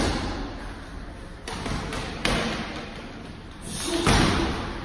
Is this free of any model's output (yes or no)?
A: yes